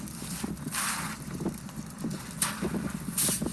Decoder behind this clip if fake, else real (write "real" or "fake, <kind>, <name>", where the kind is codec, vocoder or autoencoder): real